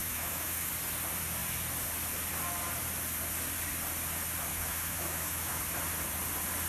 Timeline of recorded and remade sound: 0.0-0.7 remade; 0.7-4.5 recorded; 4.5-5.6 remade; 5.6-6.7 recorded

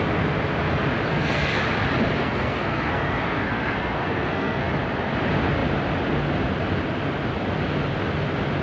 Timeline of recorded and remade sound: 0.0-1.1 recorded; 1.1-1.6 remade; 1.6-2.2 recorded; 2.2-4.7 remade; 4.7-8.6 recorded

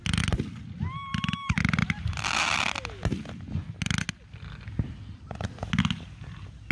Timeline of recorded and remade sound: 0.0-6.7 recorded

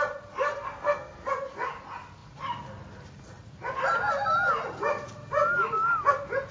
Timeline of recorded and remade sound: 0.0-0.5 recorded; 0.5-1.3 remade; 1.3-6.5 recorded

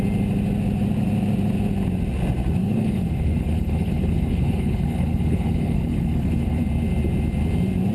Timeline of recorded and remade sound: 0.0-2.6 recorded; 2.6-6.6 remade; 6.6-7.9 recorded

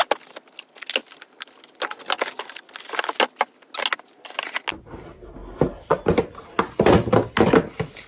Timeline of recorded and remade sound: 0.0-8.1 recorded